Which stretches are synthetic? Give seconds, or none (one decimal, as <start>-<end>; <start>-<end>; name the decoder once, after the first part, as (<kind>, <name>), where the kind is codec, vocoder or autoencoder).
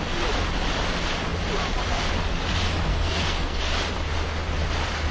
2.9-3.6 (codec, SNAC)